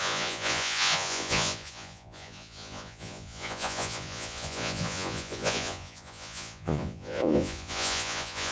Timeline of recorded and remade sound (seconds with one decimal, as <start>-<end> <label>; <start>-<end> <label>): 0.0-8.5 remade

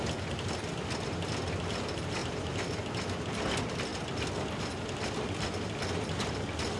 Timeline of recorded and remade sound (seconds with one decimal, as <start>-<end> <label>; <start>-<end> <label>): 0.0-6.8 recorded

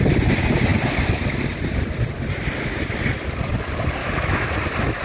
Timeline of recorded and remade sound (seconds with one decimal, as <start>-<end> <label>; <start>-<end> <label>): 0.0-4.0 recorded; 4.0-4.5 remade; 4.5-5.0 recorded

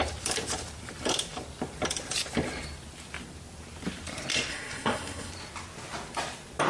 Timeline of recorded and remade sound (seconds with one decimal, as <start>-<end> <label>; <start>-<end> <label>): 0.0-4.5 recorded; 4.5-5.3 remade; 5.3-6.7 recorded